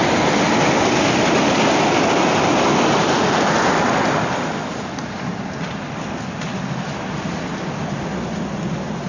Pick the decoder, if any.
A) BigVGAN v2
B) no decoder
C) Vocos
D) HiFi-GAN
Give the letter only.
B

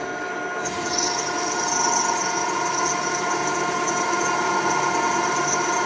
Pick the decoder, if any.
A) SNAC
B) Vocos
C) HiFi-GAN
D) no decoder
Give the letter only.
D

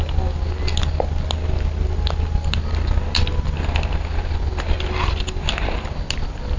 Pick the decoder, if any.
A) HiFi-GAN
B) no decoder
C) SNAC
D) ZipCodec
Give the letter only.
B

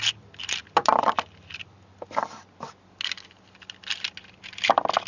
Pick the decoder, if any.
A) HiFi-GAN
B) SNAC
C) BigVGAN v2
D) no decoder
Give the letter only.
D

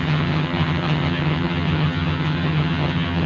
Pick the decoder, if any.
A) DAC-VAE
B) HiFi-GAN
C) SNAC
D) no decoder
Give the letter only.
B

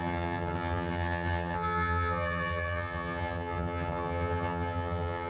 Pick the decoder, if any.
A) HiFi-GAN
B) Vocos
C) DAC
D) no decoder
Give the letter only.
A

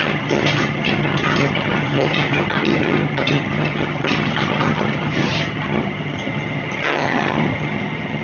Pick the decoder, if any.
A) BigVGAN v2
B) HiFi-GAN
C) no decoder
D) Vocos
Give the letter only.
B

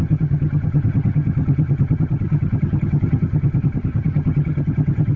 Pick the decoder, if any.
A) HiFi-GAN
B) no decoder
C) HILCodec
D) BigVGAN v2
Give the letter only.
A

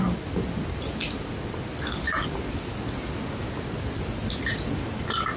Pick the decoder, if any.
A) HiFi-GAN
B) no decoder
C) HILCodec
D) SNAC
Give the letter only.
B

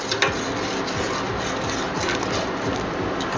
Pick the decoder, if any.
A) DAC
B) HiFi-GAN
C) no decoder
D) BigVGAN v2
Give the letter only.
C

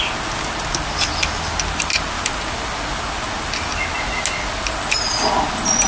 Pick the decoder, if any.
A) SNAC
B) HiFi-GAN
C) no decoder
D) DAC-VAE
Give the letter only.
C